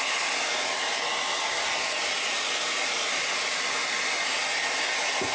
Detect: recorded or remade recorded